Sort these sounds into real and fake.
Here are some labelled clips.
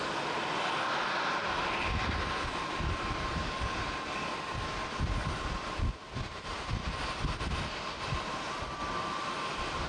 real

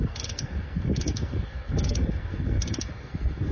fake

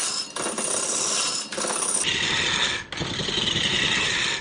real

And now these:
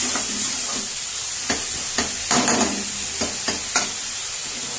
real